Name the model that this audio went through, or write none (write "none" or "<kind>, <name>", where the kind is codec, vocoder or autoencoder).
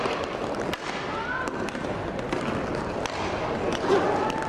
none